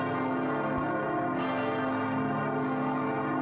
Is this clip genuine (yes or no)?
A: yes